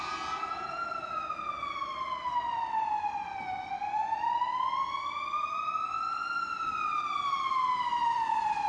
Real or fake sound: real